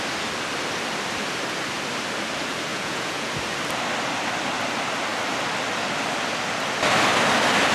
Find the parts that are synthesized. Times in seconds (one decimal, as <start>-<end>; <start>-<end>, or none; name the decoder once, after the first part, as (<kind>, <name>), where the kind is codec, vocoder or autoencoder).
2.7-3.3 (vocoder, Vocos)